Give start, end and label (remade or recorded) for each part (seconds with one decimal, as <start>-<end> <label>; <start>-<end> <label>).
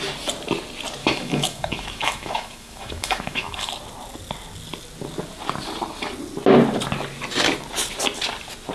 0.0-1.0 recorded; 1.0-3.7 remade; 3.7-8.7 recorded